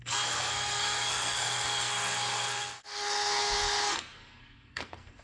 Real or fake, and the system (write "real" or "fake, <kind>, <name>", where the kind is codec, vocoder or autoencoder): fake, codec, SNAC